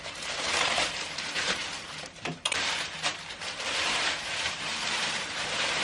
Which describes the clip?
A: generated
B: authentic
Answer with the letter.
A